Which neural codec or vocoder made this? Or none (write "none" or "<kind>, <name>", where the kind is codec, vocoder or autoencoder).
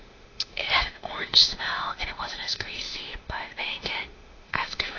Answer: autoencoder, DAC-VAE